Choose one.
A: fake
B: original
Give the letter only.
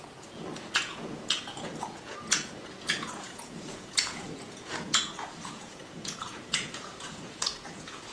A